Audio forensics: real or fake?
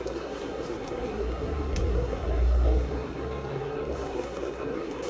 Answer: fake